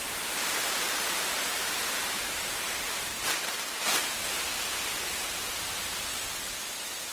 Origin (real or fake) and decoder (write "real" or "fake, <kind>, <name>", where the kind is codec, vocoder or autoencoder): fake, vocoder, BigVGAN v2